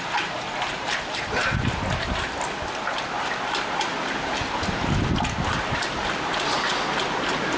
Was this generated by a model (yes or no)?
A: no